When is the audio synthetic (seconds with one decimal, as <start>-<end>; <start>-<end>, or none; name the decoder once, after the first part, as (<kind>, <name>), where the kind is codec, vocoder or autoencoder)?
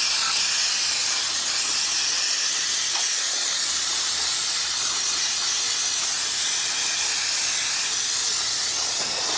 none